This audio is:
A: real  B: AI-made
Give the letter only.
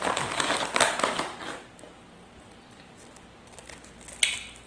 A